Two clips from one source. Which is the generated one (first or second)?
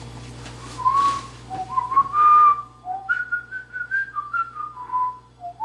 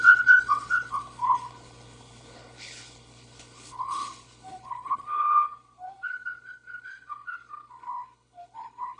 second